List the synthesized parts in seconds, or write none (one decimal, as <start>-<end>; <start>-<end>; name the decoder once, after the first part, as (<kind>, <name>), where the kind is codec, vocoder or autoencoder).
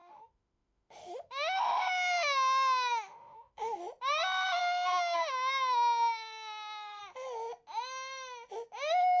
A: 0.0-3.8 (autoencoder, DAC-VAE); 4.6-7.0